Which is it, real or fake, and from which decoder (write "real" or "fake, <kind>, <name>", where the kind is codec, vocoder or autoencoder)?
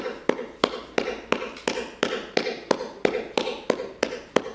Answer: fake, vocoder, BigVGAN v2